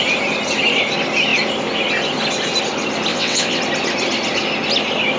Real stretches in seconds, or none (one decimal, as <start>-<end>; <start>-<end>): 0.0-3.1; 3.6-5.2